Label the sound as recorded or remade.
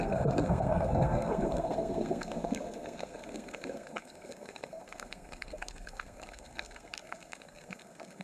remade